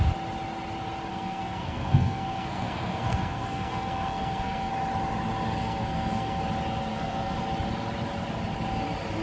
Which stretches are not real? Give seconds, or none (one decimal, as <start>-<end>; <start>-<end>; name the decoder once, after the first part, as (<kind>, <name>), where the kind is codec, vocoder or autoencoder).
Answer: 1.1-4.7 (codec, SNAC); 5.6-6.4; 6.9-7.4